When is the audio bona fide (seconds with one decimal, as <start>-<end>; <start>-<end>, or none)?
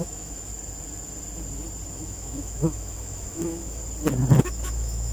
0.5-1.9; 3.8-4.4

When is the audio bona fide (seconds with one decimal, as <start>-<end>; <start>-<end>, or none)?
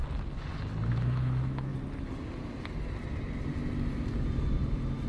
0.0-0.9; 1.7-5.1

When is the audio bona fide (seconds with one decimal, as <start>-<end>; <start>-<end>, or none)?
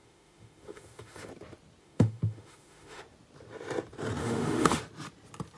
1.3-1.8; 3.0-4.2; 4.8-5.6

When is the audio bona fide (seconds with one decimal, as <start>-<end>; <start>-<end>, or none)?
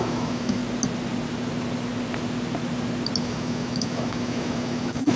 0.6-3.2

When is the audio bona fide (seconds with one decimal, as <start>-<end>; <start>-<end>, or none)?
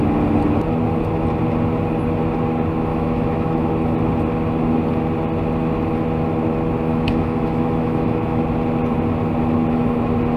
0.0-2.9; 3.7-6.9; 8.4-10.4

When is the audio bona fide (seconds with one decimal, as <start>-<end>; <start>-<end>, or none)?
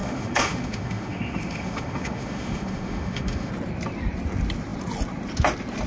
3.5-5.9